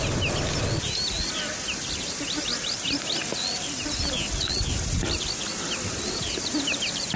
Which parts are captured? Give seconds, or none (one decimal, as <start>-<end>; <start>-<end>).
0.0-7.2